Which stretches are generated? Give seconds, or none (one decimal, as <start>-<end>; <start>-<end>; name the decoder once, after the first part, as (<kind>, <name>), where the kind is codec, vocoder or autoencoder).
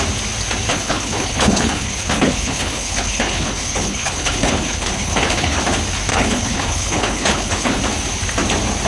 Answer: 0.7-5.6 (codec, HILCodec); 6.1-7.8